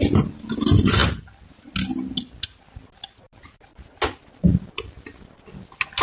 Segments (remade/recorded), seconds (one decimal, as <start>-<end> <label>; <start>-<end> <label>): 0.0-6.0 recorded